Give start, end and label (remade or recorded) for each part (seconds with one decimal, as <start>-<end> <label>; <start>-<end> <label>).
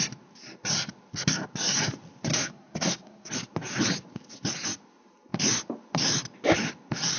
0.0-2.3 recorded; 2.3-3.3 remade; 3.3-7.2 recorded